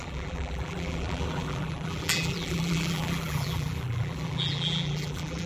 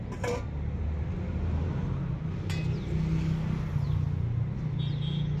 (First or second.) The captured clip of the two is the second